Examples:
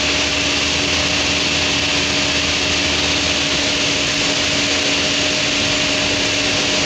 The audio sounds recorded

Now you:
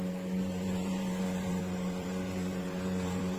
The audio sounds remade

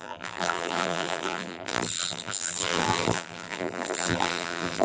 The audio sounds remade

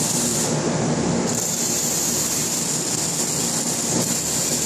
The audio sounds recorded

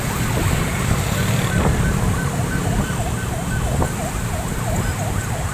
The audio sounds recorded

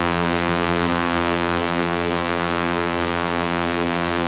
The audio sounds remade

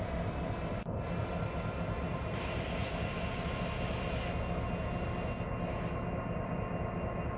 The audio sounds recorded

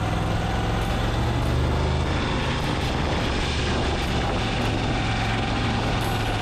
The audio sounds recorded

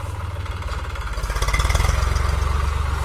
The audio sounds recorded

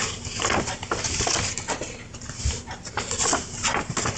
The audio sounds recorded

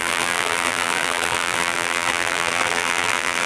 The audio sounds remade